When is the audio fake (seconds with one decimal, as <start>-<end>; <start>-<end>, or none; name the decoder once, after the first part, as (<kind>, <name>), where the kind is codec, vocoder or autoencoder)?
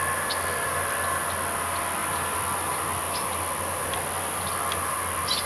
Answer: none